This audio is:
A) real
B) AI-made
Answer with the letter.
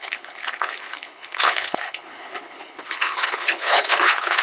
B